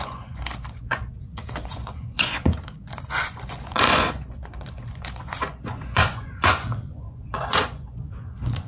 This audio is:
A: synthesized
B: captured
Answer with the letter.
A